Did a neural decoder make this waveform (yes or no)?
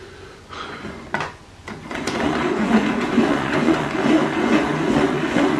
yes